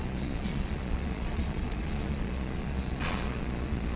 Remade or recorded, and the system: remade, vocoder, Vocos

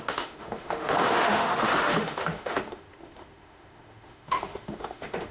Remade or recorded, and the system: remade, autoencoder, DAC-VAE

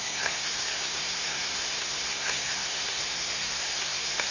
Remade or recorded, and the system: remade, codec, SNAC